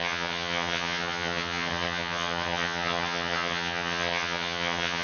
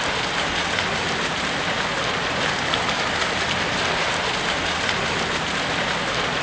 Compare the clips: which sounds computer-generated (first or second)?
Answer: first